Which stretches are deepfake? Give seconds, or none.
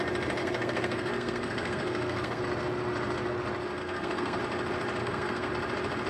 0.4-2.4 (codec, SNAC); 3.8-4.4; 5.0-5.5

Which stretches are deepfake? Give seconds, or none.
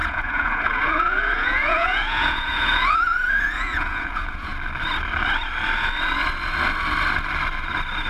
0.0-4.5 (vocoder, Vocos)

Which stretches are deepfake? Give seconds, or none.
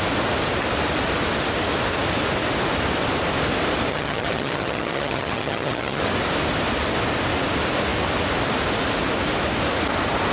3.9-6.0 (vocoder, HiFi-GAN)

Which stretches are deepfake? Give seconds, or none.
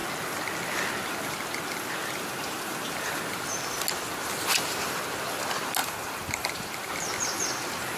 2.0-3.2 (vocoder, BigVGAN v2); 5.8-6.9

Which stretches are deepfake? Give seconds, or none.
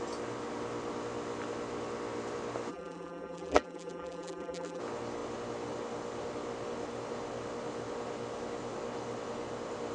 2.7-4.8 (vocoder, BigVGAN v2)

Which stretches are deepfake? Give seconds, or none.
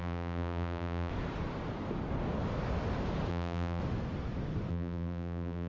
0.0-1.1 (vocoder, BigVGAN v2); 3.3-3.8; 4.7-5.7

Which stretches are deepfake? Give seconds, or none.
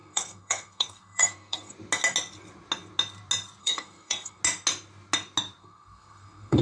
0.0-1.7 (codec, SNAC); 3.6-4.4; 5.6-6.6